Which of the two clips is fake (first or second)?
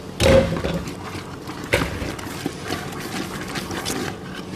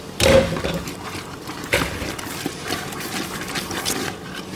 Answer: second